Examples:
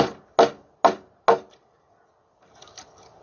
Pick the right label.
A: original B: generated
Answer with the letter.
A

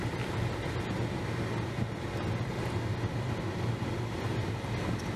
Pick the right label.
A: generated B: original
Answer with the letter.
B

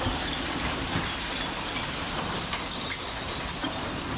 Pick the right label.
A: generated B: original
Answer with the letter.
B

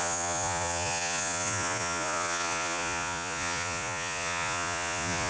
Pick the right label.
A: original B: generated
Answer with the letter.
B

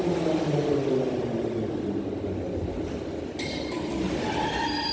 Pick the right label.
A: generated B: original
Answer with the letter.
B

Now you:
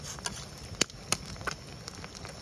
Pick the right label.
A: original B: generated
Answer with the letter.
A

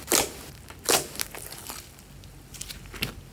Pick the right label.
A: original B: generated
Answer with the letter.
A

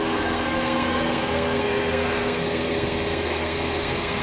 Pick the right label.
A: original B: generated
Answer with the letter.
B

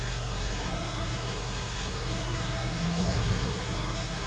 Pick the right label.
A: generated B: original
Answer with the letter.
A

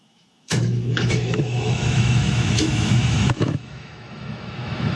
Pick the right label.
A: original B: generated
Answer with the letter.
B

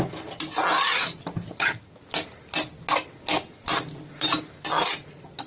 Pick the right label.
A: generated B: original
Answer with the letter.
B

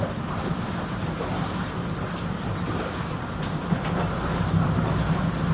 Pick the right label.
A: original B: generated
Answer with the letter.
A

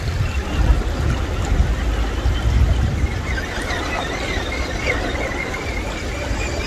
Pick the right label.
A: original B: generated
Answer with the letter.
B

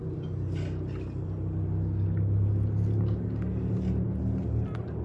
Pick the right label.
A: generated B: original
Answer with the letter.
B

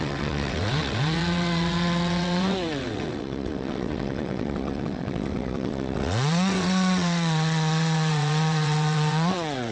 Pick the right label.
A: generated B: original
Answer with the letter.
A